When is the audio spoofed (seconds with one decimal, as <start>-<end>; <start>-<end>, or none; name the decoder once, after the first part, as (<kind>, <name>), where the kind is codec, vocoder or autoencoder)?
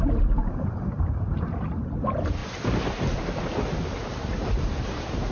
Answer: 0.0-5.3 (vocoder, BigVGAN v2)